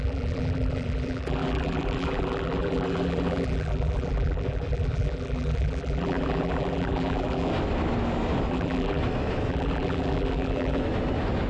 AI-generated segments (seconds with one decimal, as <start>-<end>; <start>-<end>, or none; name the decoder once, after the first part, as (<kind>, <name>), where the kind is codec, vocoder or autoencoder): 0.0-7.5 (vocoder, BigVGAN v2); 8.5-9.0; 9.5-10.8